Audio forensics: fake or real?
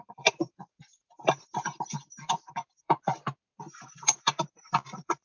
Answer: fake